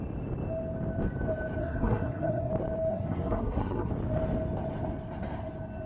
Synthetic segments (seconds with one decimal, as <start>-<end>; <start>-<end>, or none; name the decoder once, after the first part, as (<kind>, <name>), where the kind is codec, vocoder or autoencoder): 1.6-2.5 (codec, SNAC); 2.9-3.9